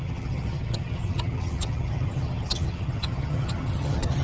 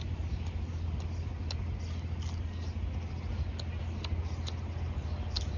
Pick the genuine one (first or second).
second